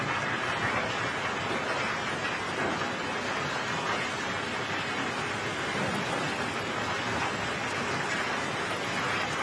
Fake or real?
real